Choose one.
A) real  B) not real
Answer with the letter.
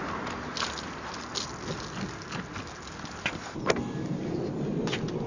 A